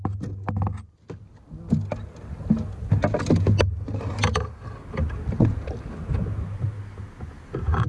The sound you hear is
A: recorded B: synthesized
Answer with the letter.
A